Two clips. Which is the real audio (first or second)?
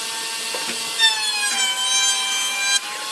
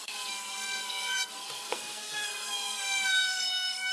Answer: first